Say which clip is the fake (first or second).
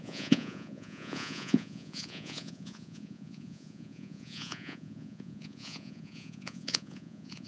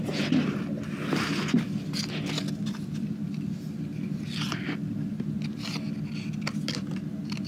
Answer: first